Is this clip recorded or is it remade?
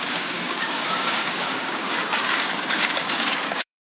remade